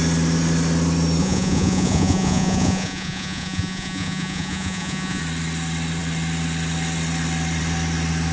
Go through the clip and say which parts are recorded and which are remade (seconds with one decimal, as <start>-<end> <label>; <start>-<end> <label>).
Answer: 0.0-1.2 recorded; 1.2-5.2 remade; 5.2-8.3 recorded